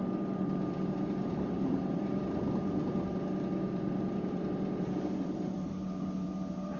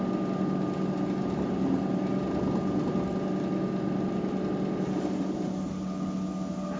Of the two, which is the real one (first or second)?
second